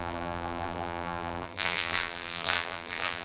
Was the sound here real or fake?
fake